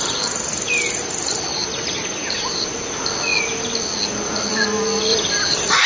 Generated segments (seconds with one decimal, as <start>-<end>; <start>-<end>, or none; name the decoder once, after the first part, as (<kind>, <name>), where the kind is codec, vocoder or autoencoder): 1.5-2.7 (vocoder, BigVGAN v2); 5.1-5.9